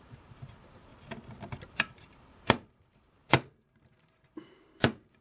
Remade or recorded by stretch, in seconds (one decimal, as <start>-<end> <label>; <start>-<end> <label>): 0.0-0.9 remade; 0.9-1.5 recorded; 1.5-5.2 remade